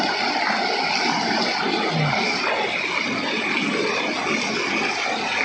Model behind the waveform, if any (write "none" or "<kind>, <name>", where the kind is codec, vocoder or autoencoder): none